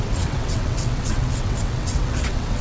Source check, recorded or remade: remade